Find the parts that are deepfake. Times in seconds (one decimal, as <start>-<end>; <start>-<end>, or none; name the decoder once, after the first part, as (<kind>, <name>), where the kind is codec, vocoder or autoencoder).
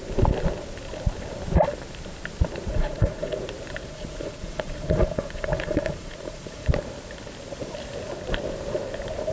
2.7-3.4 (vocoder, Vocos); 3.8-6.7